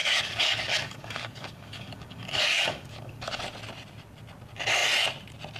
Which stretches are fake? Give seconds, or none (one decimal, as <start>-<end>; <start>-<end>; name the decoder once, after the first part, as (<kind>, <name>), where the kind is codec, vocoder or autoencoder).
0.0-3.4 (codec, DAC)